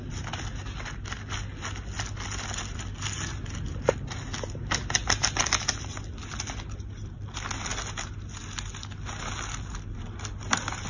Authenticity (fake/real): real